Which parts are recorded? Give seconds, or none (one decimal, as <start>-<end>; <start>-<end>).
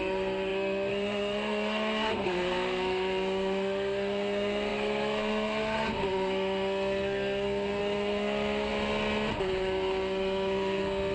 8.7-9.4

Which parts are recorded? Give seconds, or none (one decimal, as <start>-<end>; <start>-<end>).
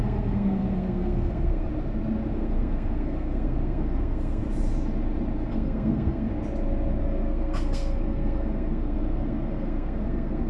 1.7-2.3; 4.4-5.5; 6.3-7.0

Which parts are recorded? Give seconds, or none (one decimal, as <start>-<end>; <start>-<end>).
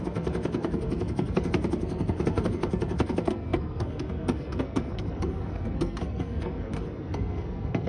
none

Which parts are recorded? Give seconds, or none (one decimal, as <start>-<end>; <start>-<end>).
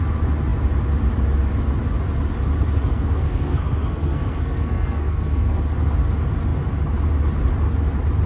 0.0-2.8; 5.6-8.3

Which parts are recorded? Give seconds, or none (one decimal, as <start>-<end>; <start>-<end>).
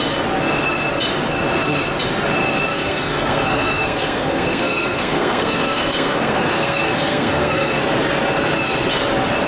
0.0-2.7; 7.8-9.5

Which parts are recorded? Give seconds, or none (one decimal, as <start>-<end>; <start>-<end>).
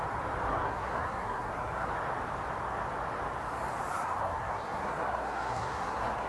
0.0-0.5; 1.9-3.9